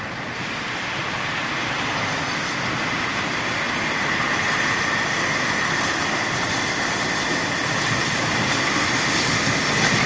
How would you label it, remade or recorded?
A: remade